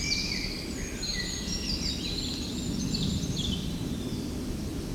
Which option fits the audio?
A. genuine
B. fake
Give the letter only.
B